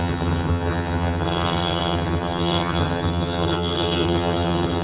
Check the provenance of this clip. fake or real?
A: fake